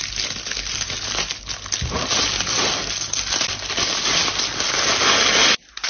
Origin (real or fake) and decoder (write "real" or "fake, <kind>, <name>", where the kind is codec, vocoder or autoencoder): real